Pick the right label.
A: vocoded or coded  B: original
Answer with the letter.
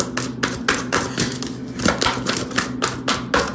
B